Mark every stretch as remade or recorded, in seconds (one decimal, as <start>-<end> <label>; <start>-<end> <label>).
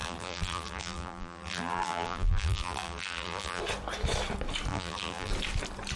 0.0-3.6 remade; 3.6-4.7 recorded; 4.7-5.3 remade; 5.3-6.0 recorded